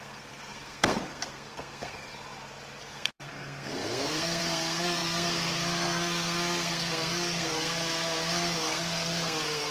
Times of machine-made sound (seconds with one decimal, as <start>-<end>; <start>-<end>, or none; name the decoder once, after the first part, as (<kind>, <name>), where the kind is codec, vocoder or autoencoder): 0.0-2.1 (codec, SNAC); 2.8-9.7